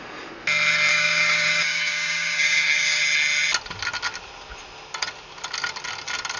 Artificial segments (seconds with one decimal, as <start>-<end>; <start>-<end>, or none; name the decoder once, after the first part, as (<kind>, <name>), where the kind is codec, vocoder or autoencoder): 0.9-3.0 (codec, DAC)